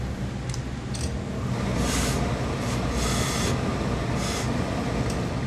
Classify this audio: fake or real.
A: real